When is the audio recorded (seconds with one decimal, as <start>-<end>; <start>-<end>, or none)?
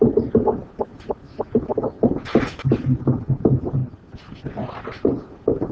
0.0-5.7